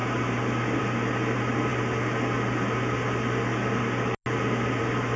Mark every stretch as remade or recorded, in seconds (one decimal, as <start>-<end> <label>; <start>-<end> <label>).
0.0-5.2 recorded